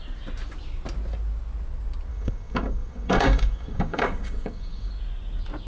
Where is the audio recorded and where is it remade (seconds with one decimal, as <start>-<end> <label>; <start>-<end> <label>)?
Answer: 0.0-2.1 recorded; 2.1-4.9 remade; 4.9-5.7 recorded